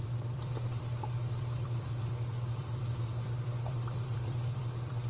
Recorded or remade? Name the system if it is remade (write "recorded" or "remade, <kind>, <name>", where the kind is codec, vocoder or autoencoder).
remade, vocoder, BigVGAN v2